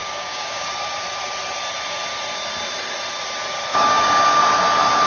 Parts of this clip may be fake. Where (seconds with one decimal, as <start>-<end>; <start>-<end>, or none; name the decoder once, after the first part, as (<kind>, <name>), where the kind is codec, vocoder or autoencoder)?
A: 0.0-0.7 (codec, DAC); 3.7-4.4